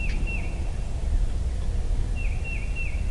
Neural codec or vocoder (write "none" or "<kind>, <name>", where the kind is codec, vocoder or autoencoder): none